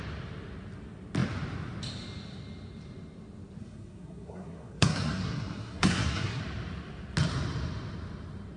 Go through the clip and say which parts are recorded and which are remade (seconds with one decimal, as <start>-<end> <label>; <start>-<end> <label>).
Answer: 0.0-3.6 recorded; 3.6-6.4 remade; 6.4-8.6 recorded